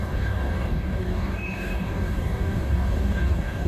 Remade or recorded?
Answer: remade